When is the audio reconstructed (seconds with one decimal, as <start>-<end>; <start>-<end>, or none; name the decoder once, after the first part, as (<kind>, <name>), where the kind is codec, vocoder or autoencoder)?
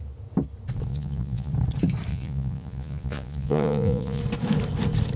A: 0.9-1.5 (vocoder, Vocos); 2.1-4.2